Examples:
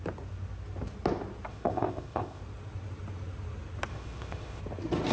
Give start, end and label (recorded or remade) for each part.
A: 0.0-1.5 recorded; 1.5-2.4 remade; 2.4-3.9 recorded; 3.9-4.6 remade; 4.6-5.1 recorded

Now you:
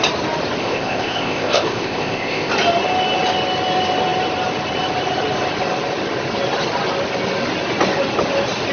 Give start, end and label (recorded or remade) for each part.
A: 0.0-0.6 recorded; 0.6-2.5 remade; 2.5-8.7 recorded

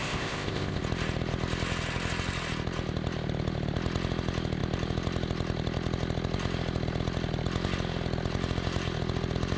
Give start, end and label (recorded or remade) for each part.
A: 0.0-0.8 remade; 0.8-9.6 recorded

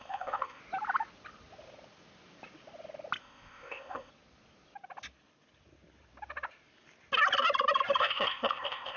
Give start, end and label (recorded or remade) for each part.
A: 0.0-0.6 remade; 0.6-3.2 recorded; 3.2-4.1 remade; 4.1-8.0 recorded; 8.0-9.0 remade

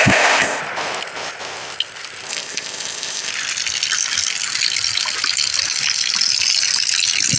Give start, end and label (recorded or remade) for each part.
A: 0.0-0.6 remade; 0.6-2.3 recorded; 2.3-3.3 remade; 3.3-7.4 recorded

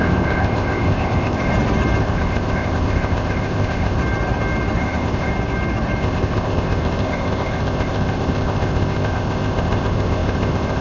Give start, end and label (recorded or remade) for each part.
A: 0.0-1.5 remade; 1.5-2.0 recorded; 2.0-4.0 remade; 4.0-4.8 recorded; 4.8-5.3 remade; 5.3-6.0 recorded; 6.0-10.8 remade